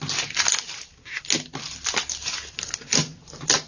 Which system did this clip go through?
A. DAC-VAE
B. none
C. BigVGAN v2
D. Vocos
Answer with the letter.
B